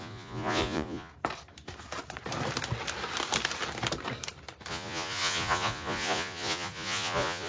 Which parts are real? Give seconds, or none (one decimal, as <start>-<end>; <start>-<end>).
1.1-4.7